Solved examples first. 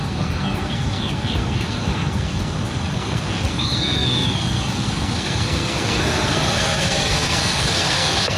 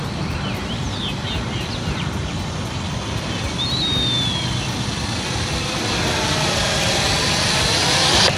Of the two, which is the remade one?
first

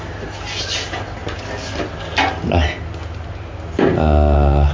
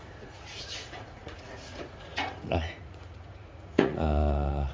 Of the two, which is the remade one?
second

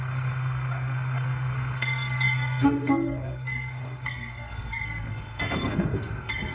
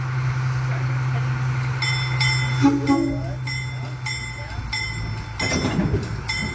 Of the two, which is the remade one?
first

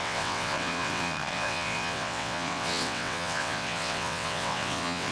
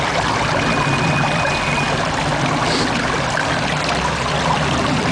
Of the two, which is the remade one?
first